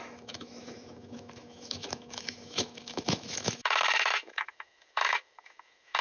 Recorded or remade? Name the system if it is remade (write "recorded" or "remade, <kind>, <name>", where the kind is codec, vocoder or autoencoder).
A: remade, autoencoder, DAC-VAE